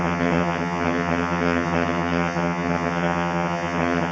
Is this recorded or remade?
remade